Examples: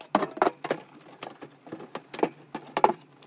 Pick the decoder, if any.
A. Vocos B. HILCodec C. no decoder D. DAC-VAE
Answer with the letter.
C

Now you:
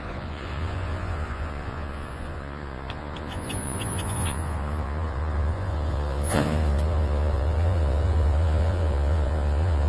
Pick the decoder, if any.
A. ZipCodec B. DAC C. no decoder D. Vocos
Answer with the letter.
D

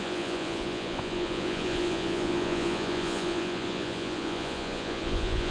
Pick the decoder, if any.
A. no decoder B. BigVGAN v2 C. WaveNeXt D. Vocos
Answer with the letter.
D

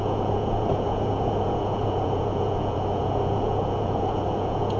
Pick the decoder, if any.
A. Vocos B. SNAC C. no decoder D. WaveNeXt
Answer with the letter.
A